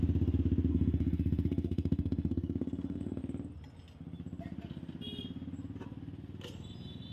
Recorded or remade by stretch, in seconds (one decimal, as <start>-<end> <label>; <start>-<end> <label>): 0.0-0.7 recorded; 0.7-3.2 remade; 3.2-7.1 recorded